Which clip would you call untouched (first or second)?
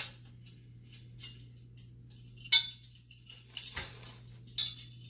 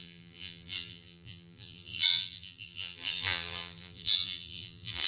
first